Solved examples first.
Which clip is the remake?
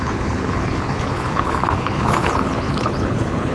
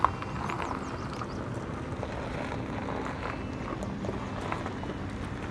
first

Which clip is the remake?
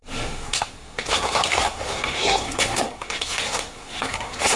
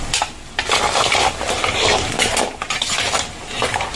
first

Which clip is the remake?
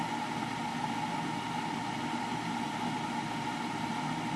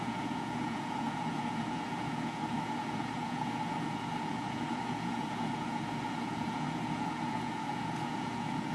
second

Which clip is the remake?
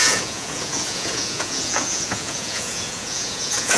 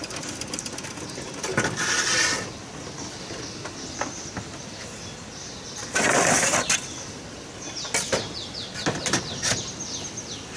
first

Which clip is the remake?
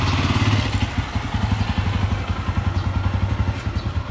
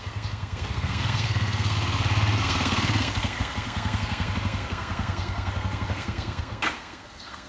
second